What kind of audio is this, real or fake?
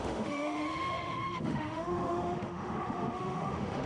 fake